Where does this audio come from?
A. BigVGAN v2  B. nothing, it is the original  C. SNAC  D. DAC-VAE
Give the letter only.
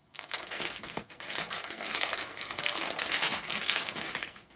C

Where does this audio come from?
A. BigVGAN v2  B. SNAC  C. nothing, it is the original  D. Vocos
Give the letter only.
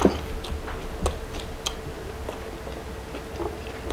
C